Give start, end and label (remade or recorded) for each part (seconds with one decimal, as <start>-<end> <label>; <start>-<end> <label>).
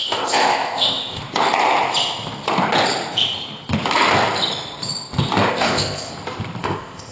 0.0-1.2 remade; 1.2-5.5 recorded; 5.5-6.1 remade; 6.1-6.6 recorded; 6.6-7.1 remade